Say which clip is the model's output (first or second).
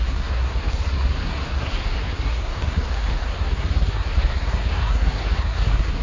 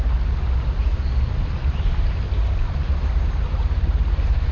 first